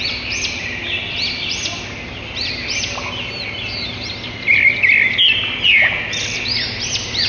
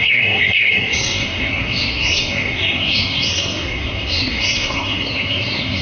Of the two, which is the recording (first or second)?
first